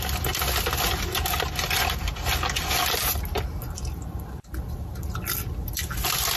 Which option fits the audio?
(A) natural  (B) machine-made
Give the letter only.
A